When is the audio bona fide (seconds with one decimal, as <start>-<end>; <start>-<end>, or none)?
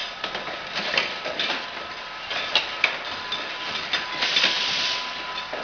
none